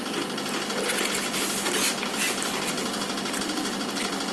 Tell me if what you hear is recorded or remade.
recorded